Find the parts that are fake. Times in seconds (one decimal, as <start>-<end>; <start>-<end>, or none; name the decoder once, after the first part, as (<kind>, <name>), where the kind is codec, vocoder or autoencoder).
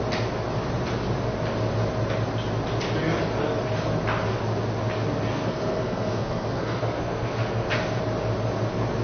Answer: 5.3-8.0 (codec, SNAC)